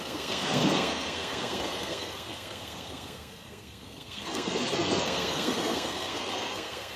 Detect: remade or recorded remade